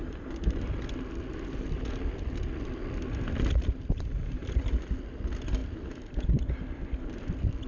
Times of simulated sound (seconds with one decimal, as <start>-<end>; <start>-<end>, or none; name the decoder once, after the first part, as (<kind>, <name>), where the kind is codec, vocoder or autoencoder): none